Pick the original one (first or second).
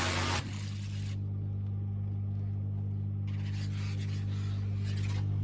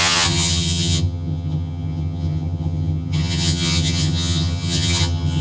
first